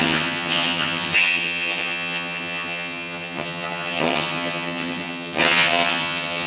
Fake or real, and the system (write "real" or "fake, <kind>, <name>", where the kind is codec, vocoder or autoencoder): fake, vocoder, HiFi-GAN